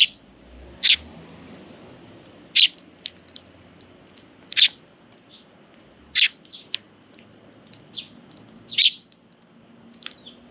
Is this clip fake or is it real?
real